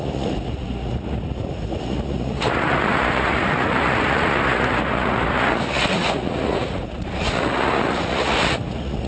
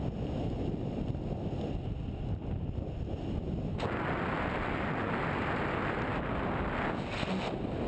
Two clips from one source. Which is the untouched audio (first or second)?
second